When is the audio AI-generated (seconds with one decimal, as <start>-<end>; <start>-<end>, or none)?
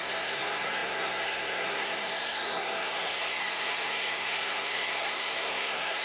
0.0-6.0